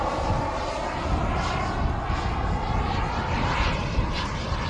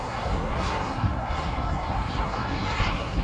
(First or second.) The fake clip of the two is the second